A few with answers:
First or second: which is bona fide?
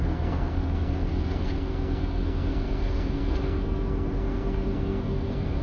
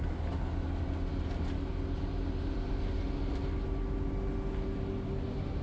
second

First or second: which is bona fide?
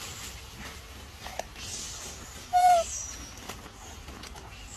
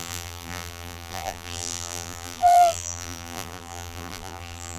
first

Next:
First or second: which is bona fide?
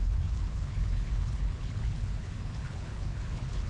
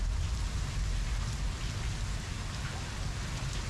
second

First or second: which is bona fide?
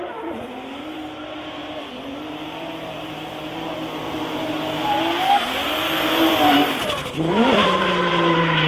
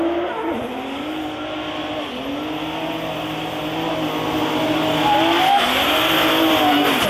second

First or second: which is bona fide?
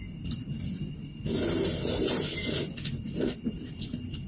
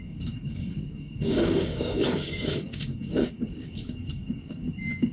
first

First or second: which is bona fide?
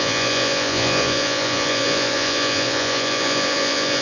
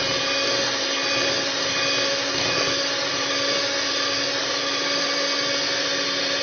second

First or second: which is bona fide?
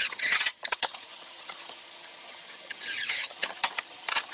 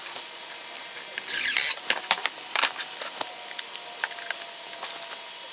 second